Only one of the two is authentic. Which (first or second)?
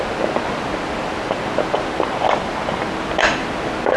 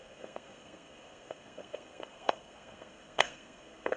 first